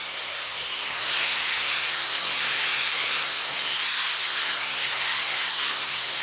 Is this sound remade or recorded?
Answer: remade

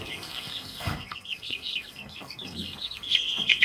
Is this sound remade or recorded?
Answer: remade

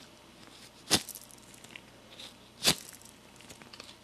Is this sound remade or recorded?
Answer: recorded